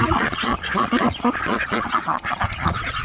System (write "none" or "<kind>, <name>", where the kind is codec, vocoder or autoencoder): vocoder, Vocos